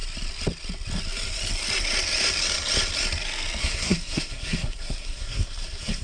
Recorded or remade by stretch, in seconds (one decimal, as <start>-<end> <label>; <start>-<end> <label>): 0.0-3.6 recorded; 3.6-6.0 remade